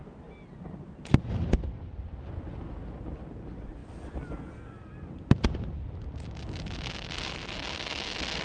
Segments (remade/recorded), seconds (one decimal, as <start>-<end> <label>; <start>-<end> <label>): 0.0-8.4 recorded